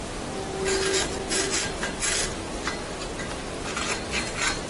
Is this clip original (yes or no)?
yes